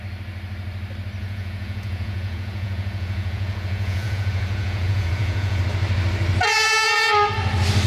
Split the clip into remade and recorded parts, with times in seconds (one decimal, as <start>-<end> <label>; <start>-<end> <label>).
0.0-1.2 recorded; 1.2-5.6 remade; 5.6-7.9 recorded